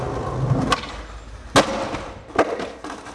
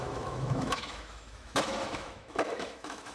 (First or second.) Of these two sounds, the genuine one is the first